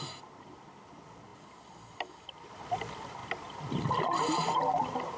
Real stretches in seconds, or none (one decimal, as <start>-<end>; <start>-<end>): 0.0-5.2